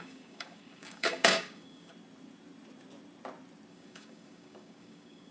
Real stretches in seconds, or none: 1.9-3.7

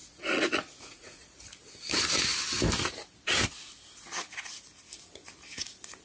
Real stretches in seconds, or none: 1.4-6.0

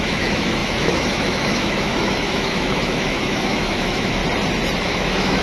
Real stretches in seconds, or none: 4.2-4.8